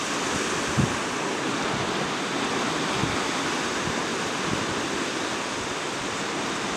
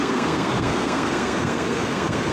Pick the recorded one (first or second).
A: first